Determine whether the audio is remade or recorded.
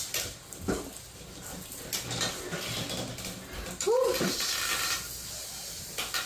recorded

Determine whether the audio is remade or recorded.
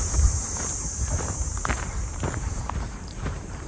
remade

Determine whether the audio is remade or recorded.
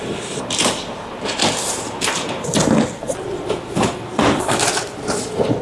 remade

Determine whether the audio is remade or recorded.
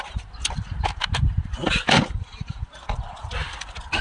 recorded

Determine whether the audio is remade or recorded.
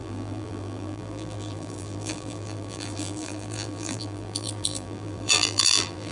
remade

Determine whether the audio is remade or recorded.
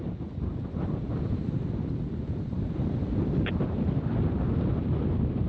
remade